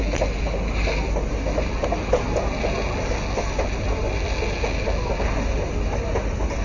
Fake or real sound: real